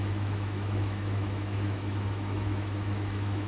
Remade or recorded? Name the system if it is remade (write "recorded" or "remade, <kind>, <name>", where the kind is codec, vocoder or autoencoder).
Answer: remade, autoencoder, DAC-VAE